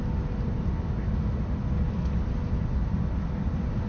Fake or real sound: real